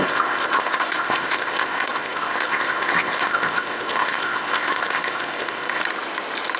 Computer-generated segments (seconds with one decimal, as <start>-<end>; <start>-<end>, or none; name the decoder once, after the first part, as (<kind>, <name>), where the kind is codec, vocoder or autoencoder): 0.0-5.8 (codec, ZipCodec)